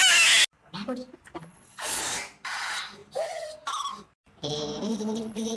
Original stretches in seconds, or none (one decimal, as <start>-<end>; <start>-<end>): 0.0-1.4; 2.0-4.9